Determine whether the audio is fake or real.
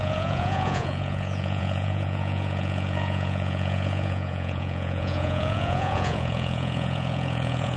fake